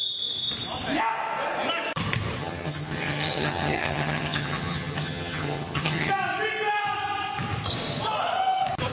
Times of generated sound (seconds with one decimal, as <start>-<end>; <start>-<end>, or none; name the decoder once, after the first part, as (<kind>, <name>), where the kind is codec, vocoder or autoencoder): 2.4-6.1 (vocoder, HiFi-GAN)